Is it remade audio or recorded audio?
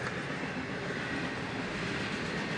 recorded